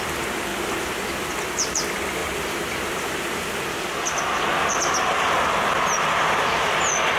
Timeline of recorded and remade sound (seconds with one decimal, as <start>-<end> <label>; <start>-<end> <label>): 0.0-7.2 recorded